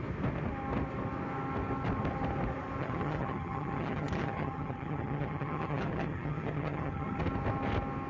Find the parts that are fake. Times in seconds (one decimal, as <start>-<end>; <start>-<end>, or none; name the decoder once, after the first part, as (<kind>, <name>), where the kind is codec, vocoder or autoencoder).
2.8-7.2 (vocoder, HiFi-GAN)